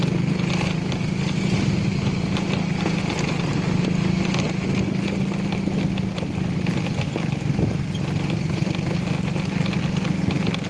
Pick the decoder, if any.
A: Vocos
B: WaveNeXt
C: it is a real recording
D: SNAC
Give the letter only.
C